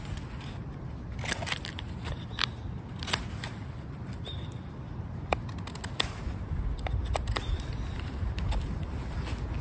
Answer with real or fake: real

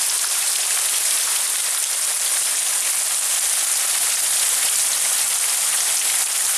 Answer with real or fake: real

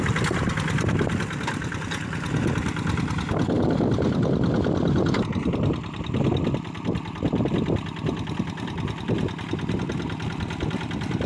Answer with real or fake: real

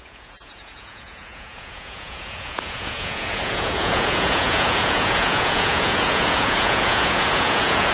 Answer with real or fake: fake